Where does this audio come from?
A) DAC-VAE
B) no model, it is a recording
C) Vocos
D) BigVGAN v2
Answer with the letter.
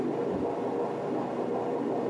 B